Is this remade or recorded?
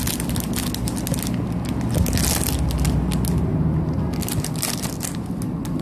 recorded